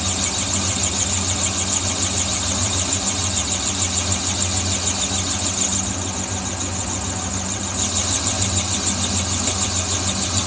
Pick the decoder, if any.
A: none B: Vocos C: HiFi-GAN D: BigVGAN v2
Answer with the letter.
A